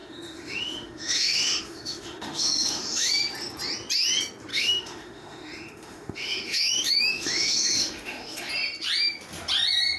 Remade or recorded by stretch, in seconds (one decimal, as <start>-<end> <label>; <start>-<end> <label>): 0.0-3.1 remade; 3.1-4.5 recorded; 4.5-8.5 remade; 8.5-10.0 recorded